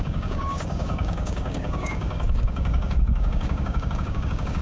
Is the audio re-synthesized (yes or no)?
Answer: yes